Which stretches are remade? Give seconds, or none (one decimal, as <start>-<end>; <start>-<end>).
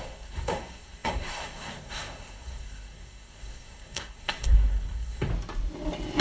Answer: 0.0-5.3